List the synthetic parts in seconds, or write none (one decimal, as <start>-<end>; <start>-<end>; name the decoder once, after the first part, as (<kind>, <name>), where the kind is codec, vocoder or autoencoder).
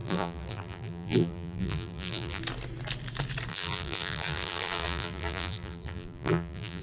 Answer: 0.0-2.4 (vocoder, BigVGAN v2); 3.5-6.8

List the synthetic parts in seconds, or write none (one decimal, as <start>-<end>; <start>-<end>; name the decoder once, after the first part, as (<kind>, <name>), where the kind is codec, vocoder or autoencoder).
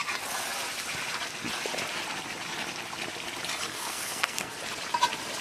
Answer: 3.7-4.6 (codec, SNAC)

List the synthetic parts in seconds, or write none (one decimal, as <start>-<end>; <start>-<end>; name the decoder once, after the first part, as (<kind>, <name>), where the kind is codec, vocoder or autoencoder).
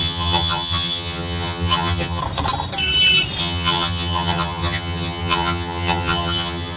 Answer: 0.0-2.2 (vocoder, HiFi-GAN); 3.4-6.8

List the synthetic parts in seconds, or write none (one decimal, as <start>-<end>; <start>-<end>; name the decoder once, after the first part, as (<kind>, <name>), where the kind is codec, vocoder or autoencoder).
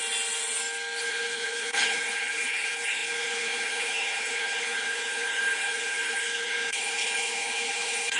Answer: 1.0-8.2 (codec, HILCodec)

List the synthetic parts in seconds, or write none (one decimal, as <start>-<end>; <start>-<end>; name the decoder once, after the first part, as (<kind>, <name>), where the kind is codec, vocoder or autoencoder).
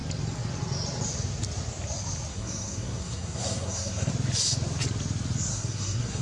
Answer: 2.3-4.1 (codec, SNAC); 5.5-6.2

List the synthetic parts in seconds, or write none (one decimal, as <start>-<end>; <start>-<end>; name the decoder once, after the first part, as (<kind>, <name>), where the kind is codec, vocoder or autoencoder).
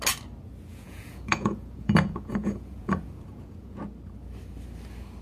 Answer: 0.7-3.8 (vocoder, Vocos)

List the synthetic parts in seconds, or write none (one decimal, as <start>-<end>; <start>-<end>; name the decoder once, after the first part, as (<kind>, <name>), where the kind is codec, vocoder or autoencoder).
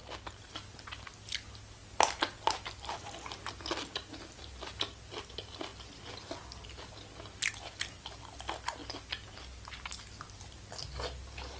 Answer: none